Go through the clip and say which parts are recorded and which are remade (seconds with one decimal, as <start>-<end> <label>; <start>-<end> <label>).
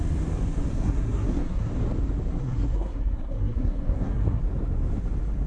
0.0-0.7 recorded; 0.7-1.7 remade; 1.7-2.3 recorded; 2.3-4.4 remade; 4.4-5.5 recorded